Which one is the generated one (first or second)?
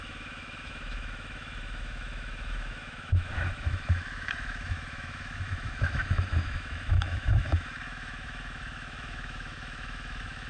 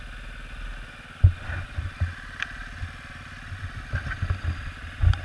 first